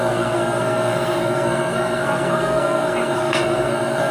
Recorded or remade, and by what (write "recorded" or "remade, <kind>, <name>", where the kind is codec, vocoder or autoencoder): remade, codec, SNAC